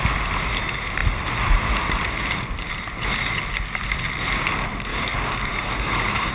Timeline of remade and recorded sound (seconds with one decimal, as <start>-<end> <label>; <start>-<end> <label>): 0.0-4.9 recorded; 4.9-6.3 remade